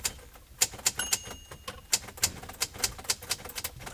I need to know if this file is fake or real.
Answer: real